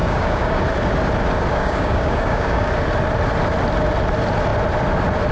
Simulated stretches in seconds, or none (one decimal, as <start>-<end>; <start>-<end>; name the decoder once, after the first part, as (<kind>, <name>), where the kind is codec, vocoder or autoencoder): 0.0-0.6 (codec, DAC); 1.5-2.7